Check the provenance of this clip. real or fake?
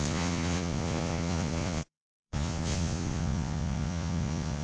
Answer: fake